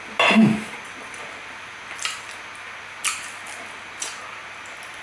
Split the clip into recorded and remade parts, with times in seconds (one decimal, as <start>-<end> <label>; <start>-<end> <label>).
0.0-5.0 recorded